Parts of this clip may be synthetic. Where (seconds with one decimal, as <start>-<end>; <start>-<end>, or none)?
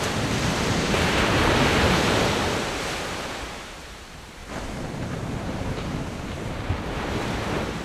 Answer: 0.0-4.4; 5.4-7.8